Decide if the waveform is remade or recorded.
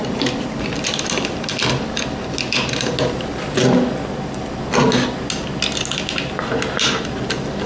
recorded